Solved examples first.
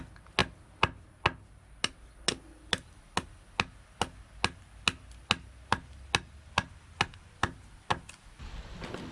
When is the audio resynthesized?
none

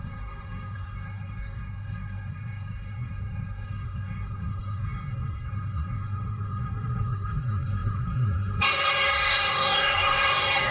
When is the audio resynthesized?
0.0-10.7

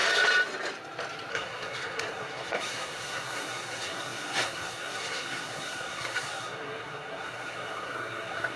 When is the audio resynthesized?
1.3-8.6

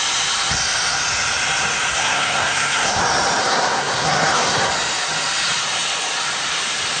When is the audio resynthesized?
1.9-3.0; 3.4-4.7

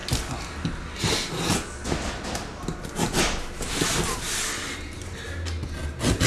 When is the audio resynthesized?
none

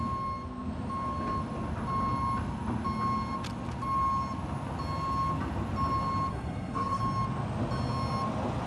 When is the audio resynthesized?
6.3-7.0

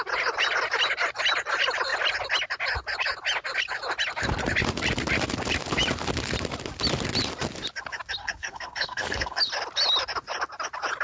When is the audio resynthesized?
8.2-9.4

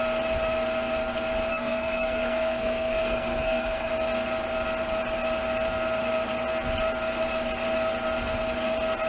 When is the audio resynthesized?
1.5-3.9